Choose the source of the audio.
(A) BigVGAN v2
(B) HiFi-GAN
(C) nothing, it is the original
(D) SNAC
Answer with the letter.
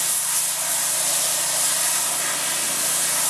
C